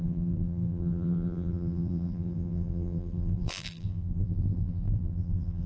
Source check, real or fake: fake